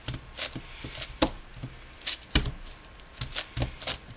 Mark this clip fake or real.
real